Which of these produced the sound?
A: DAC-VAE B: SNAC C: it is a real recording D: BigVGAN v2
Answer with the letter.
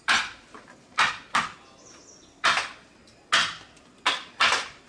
C